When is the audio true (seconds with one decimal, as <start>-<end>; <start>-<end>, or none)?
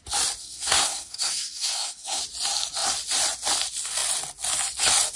0.0-0.4; 2.2-5.2